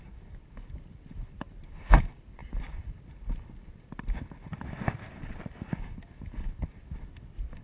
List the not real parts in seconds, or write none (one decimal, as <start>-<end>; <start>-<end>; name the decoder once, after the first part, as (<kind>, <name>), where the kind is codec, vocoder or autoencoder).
none